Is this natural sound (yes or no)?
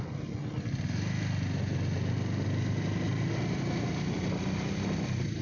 yes